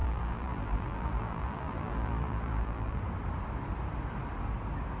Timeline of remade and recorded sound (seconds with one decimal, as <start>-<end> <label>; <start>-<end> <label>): 0.0-3.0 remade; 3.0-5.0 recorded